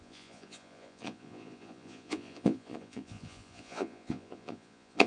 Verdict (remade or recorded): remade